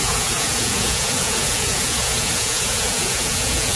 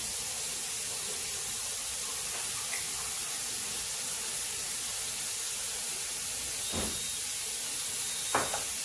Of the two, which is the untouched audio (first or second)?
second